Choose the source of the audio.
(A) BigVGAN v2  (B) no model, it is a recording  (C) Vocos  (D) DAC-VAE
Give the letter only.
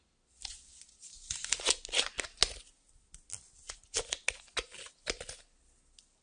B